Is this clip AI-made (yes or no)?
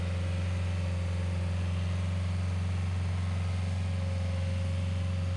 no